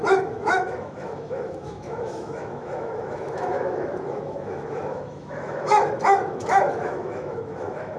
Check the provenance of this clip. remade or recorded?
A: remade